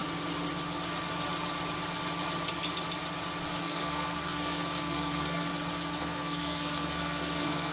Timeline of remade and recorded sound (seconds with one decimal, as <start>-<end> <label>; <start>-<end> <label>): 0.0-3.6 recorded; 3.6-5.5 remade; 5.5-6.0 recorded; 6.0-7.7 remade